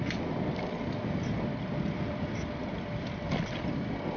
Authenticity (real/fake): real